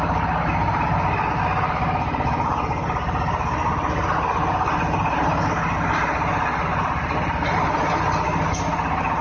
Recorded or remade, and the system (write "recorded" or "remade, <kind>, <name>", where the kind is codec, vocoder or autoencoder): recorded